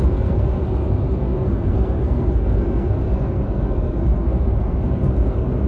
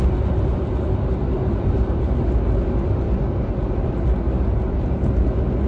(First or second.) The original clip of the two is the second